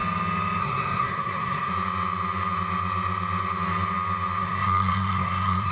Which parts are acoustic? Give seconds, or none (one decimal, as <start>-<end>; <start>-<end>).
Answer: 0.0-0.6; 1.7-4.4